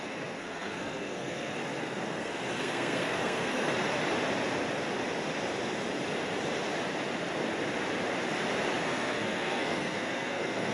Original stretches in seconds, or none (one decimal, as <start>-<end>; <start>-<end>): 3.7-8.8